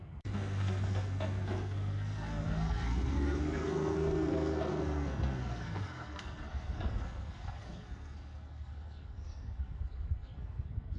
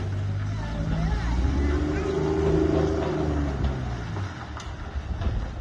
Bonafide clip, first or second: second